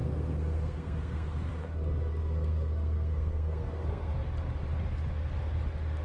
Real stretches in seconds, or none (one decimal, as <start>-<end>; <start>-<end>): 1.5-2.2; 4.1-6.0